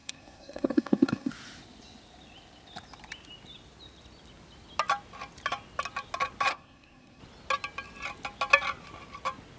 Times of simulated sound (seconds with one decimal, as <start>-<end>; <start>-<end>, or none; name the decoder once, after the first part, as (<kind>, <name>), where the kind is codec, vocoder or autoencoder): 0.0-1.3 (codec, SNAC); 6.5-7.2